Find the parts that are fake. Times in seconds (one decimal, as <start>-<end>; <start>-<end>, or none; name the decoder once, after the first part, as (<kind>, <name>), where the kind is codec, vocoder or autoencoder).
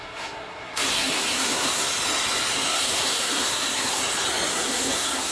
0.0-1.9 (codec, SNAC); 2.7-4.0; 4.5-5.3